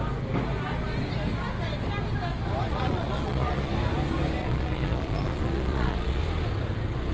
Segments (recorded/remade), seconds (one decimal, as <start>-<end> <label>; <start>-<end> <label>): 0.0-2.7 recorded; 2.7-3.7 remade; 3.7-4.4 recorded; 4.4-6.2 remade; 6.2-7.1 recorded